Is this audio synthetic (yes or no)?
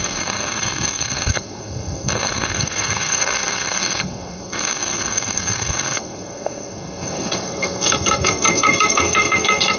yes